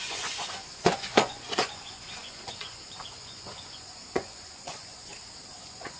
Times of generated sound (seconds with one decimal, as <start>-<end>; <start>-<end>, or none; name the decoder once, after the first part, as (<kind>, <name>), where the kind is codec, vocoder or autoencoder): 0.0-5.1 (vocoder, Vocos); 5.6-6.0